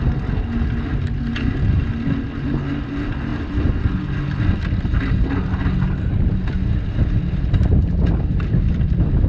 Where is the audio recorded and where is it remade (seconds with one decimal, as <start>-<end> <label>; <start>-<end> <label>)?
0.0-9.3 recorded